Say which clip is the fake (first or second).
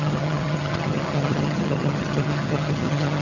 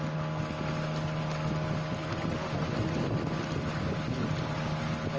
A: first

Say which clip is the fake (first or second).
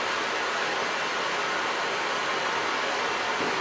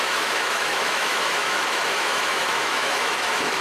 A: second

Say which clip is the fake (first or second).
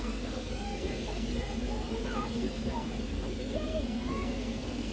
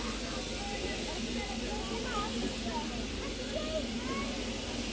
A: first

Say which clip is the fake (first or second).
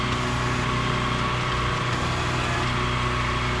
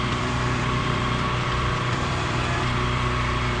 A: second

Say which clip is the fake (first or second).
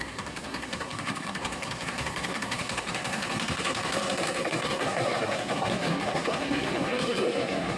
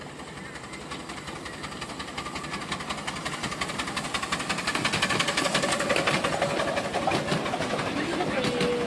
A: first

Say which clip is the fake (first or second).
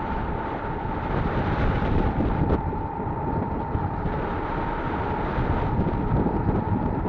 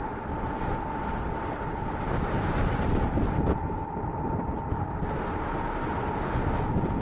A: first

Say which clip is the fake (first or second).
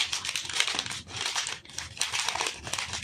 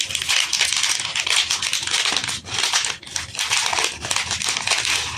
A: first